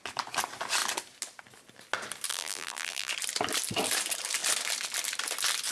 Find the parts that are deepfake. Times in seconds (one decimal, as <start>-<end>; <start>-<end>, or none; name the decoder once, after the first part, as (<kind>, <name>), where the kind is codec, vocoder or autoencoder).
2.3-3.1 (vocoder, BigVGAN v2)

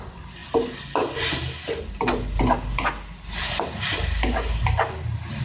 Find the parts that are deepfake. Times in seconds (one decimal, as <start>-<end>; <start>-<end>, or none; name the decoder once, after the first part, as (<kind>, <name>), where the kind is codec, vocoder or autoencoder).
none

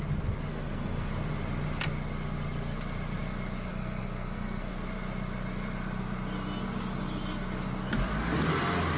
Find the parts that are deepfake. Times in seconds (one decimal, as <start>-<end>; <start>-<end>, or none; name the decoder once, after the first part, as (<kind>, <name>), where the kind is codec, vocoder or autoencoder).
0.5-1.1 (codec, SNAC); 3.7-4.7

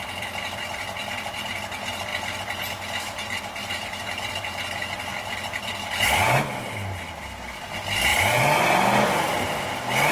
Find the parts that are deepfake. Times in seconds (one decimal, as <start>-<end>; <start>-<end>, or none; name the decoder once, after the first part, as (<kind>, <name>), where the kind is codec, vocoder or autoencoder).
5.1-6.0 (vocoder, BigVGAN v2)

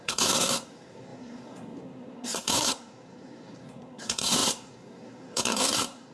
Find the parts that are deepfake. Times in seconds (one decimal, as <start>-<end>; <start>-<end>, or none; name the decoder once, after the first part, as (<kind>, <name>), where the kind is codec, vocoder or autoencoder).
0.0-6.1 (codec, SNAC)

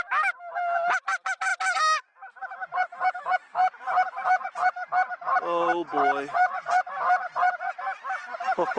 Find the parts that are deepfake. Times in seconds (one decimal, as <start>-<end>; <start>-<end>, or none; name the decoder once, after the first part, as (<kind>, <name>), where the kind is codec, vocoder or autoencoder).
none

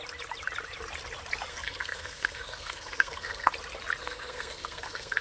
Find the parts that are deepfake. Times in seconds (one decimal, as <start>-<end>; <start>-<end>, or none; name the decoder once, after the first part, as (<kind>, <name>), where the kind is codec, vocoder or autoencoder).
1.5-3.5 (codec, SNAC); 4.0-5.2

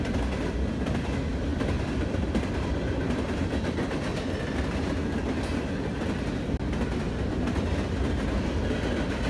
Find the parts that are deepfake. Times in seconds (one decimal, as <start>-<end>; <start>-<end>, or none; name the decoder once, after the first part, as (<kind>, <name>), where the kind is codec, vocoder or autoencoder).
none